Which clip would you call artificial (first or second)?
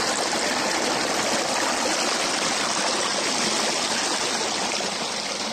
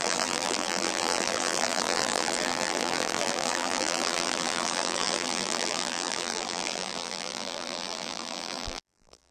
second